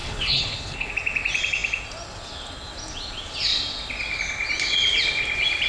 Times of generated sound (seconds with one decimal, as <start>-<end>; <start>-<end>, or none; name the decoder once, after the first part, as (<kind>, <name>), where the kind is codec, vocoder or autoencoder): 0.0-0.9 (codec, HILCodec)